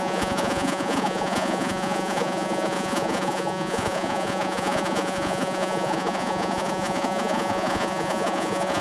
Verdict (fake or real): fake